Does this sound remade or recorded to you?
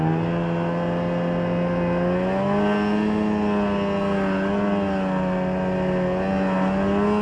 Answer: recorded